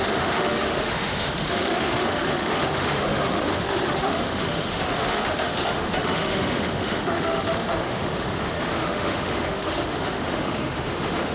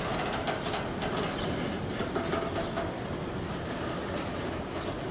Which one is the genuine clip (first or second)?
second